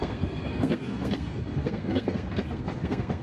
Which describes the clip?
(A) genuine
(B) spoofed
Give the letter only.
B